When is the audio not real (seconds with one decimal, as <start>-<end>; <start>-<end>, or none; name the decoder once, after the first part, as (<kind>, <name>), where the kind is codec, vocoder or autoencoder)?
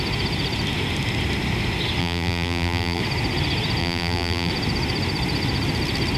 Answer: 2.0-3.0 (vocoder, BigVGAN v2); 3.8-4.5